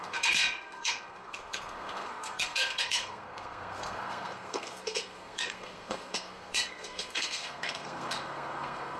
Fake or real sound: fake